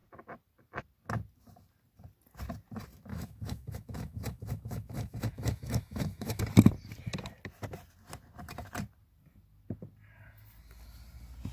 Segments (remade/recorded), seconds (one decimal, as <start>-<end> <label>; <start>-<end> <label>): 0.0-3.1 recorded; 3.1-6.4 remade; 6.4-11.5 recorded